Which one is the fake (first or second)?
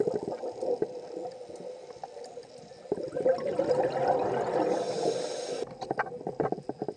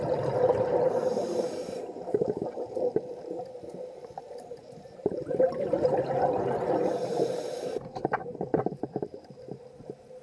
second